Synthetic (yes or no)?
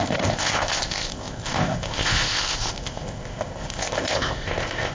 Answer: yes